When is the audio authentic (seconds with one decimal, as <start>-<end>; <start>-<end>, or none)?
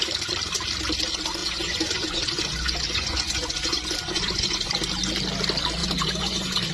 0.0-1.4; 4.7-5.8